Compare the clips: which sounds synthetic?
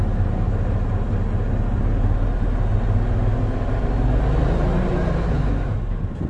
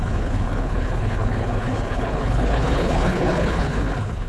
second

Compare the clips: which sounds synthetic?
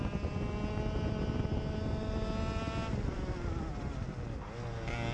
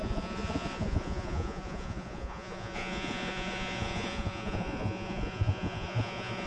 second